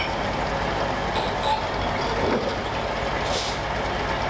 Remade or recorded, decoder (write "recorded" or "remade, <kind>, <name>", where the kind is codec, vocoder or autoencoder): recorded